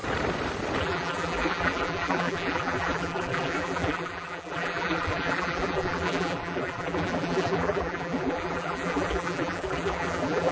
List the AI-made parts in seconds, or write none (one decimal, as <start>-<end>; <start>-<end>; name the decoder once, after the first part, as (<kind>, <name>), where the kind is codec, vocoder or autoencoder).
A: 0.8-10.5 (vocoder, BigVGAN v2)